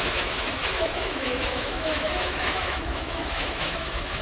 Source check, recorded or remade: remade